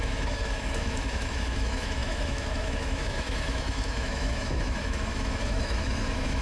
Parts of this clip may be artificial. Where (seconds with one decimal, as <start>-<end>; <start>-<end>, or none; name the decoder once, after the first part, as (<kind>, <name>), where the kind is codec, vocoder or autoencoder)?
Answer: 0.0-6.4 (autoencoder, DAC-VAE)